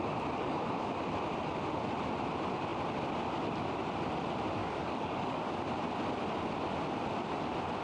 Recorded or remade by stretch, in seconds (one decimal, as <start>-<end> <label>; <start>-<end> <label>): 0.0-0.4 recorded; 0.4-0.9 remade; 0.9-4.6 recorded; 4.6-5.6 remade; 5.6-7.8 recorded